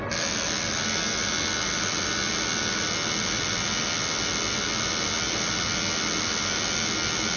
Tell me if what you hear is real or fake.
fake